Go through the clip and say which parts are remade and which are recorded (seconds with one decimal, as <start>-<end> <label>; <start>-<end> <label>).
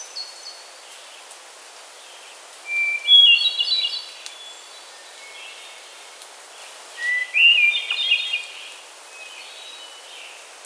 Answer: 0.0-6.6 recorded; 6.6-7.1 remade; 7.1-10.7 recorded